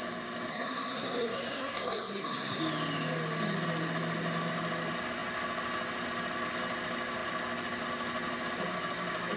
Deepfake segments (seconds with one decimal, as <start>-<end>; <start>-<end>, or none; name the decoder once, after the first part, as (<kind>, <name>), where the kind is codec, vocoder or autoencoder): 0.5-2.6 (codec, SNAC)